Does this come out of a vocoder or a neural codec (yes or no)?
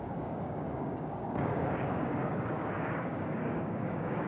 yes